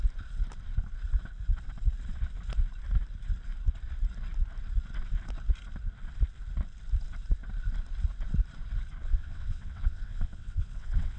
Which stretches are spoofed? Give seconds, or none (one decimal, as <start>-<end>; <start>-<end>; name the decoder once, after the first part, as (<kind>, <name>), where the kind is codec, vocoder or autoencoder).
9.0-11.2 (vocoder, WaveNeXt)